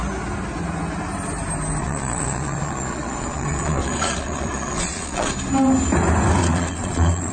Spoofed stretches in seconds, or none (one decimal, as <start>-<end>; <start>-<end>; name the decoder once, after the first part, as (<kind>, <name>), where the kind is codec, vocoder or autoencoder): 1.8-5.3 (vocoder, Vocos); 6.4-7.3